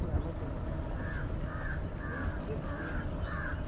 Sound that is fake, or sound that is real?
real